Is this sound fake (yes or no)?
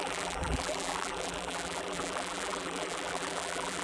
yes